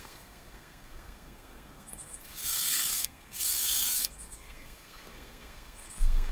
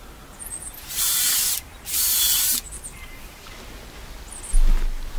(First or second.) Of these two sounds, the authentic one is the second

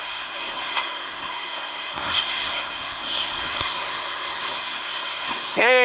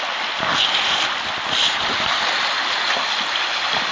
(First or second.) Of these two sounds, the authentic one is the second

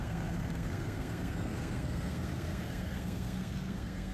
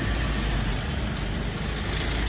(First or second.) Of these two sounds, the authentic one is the second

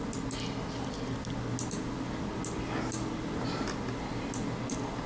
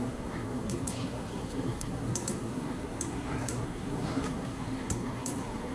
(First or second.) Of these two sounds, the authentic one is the first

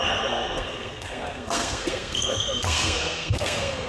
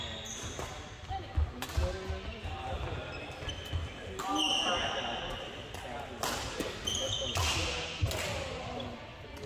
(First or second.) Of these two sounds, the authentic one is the second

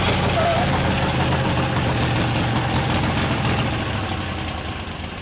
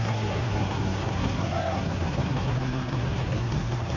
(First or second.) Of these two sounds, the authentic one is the first